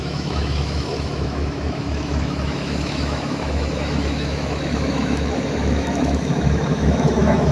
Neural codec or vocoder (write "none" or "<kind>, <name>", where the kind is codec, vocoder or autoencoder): autoencoder, DAC-VAE